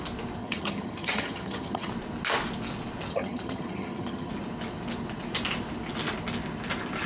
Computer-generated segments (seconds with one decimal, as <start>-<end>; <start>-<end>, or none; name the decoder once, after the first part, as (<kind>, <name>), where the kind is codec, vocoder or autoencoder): 0.4-1.9 (vocoder, HiFi-GAN); 3.1-4.3